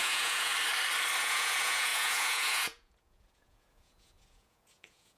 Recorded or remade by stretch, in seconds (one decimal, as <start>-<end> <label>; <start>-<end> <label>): 0.0-0.5 remade; 0.5-1.2 recorded; 1.2-5.2 remade